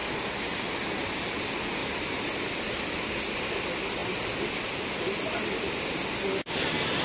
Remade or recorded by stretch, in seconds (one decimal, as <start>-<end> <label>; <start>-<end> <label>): 0.0-1.8 recorded; 1.8-2.4 remade; 2.4-7.0 recorded